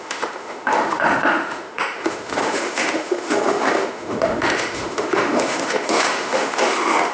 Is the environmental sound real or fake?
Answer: fake